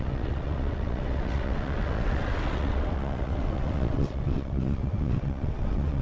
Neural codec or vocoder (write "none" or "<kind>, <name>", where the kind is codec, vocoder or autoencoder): vocoder, WaveNeXt